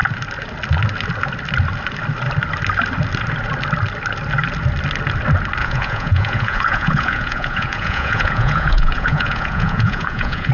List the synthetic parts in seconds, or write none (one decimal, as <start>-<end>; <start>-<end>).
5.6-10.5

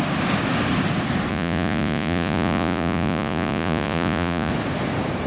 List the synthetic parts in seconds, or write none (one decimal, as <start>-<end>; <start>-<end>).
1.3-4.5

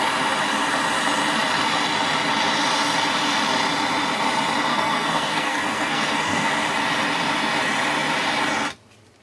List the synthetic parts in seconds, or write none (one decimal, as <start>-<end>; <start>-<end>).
4.7-6.5

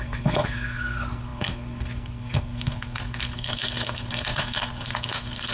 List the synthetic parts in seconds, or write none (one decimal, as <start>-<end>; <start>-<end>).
0.0-5.5

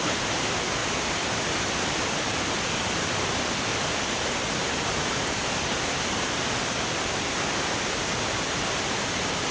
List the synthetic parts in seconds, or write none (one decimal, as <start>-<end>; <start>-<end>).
none